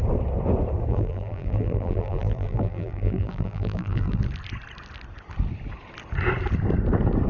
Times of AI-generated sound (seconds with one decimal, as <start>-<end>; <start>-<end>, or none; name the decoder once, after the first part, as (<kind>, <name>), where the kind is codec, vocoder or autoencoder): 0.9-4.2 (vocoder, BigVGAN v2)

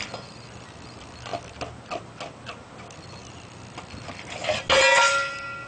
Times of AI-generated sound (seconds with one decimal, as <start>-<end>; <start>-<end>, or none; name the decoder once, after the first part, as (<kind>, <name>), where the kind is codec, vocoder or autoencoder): none

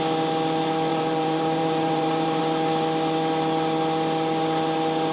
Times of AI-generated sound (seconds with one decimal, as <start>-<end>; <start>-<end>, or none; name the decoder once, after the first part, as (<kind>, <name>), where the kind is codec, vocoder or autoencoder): 0.9-2.4 (vocoder, BigVGAN v2)

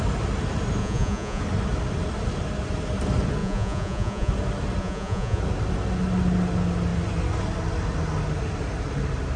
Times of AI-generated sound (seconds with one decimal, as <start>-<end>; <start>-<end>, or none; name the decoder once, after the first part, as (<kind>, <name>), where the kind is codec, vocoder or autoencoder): 0.8-1.4 (vocoder, Vocos); 3.4-4.3; 4.8-5.4